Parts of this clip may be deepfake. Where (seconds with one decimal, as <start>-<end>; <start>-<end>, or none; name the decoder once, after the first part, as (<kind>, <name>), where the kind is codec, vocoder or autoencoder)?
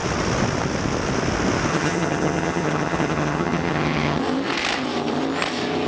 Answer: 1.7-4.2 (vocoder, HiFi-GAN)